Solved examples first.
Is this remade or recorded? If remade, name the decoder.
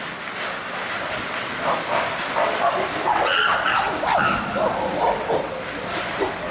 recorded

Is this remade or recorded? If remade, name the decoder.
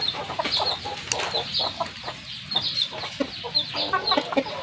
recorded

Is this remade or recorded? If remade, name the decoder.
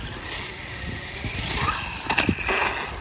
recorded